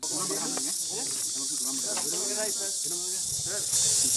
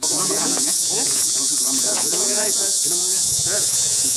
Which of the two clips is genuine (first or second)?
first